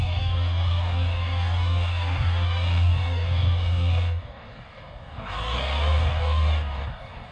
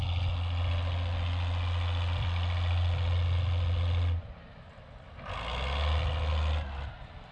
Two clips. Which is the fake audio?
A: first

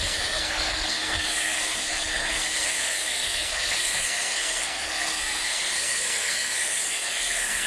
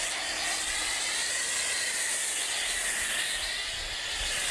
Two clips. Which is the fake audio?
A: first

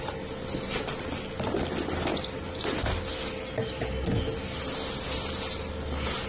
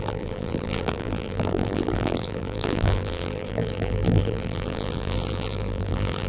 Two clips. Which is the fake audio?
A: second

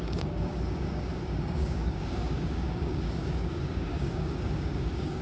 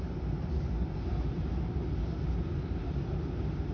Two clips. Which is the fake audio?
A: first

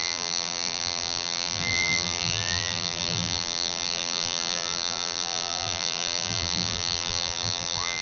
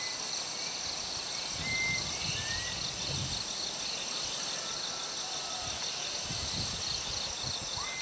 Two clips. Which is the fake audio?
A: first